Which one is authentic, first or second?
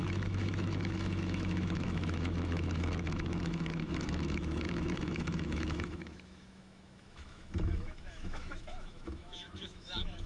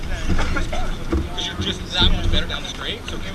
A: second